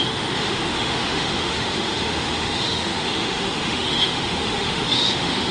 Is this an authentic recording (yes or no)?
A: no